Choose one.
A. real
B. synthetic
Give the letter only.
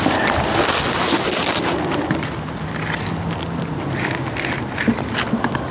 A